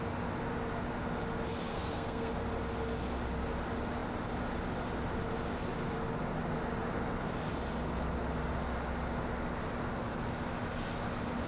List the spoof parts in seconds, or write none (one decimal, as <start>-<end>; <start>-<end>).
1.7-2.3

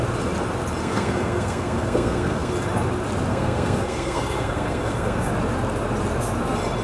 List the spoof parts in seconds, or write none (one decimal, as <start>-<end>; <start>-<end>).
0.8-2.5; 3.3-5.3

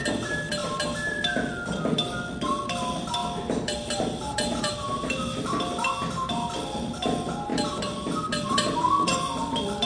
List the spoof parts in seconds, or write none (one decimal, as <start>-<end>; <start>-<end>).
none

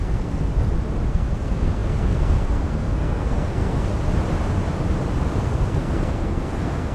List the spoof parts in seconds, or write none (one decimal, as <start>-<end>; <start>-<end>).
0.0-0.5; 1.1-3.9; 5.4-6.9